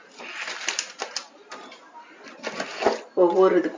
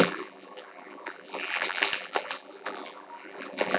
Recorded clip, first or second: first